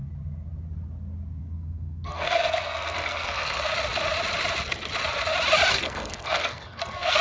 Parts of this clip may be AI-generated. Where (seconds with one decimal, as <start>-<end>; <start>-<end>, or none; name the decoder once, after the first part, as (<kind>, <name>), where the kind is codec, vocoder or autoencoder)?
1.4-3.7 (codec, SNAC); 5.7-7.2